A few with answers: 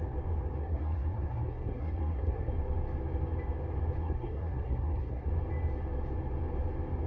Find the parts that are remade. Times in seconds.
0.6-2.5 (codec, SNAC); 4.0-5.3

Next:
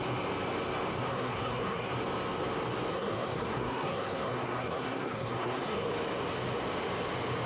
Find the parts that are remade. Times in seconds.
1.1-1.9 (codec, SNAC); 2.9-5.9

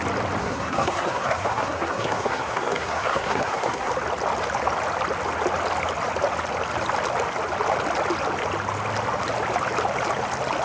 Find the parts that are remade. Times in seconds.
0.4-3.9 (codec, SNAC)

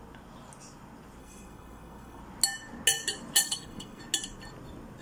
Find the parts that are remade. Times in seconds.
1.2-2.2 (codec, SNAC); 3.4-4.0

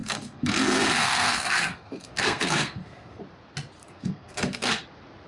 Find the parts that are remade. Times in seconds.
0.0-3.2 (codec, SNAC); 3.8-4.7

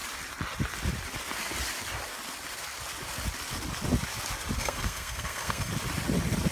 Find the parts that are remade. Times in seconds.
4.6-5.7 (codec, SNAC)

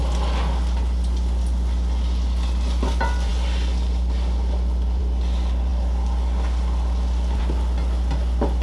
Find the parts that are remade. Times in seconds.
none

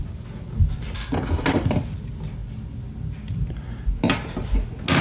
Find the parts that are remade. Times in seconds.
none